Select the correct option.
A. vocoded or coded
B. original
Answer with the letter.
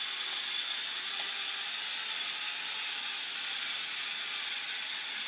B